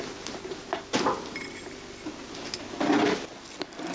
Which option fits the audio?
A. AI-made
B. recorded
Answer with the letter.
B